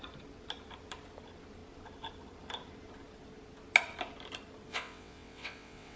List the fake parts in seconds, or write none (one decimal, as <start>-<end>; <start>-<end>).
4.7-6.0